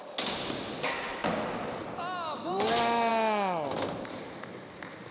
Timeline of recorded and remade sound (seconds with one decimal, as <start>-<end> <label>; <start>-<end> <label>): 0.0-5.1 recorded